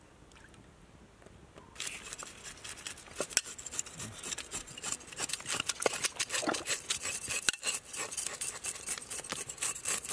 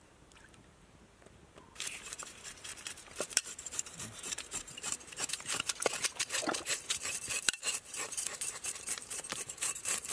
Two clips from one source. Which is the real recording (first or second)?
first